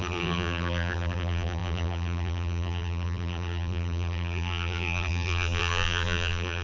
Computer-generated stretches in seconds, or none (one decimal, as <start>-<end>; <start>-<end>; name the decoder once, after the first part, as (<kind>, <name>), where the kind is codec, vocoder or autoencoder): 0.0-6.6 (vocoder, BigVGAN v2)